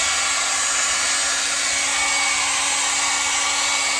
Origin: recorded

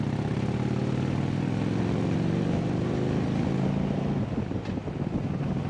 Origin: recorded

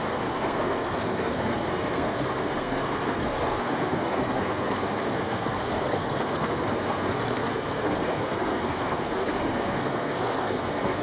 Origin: remade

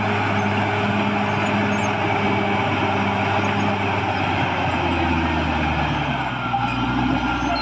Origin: recorded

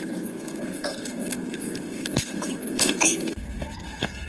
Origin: remade